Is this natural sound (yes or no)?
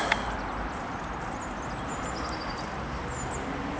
yes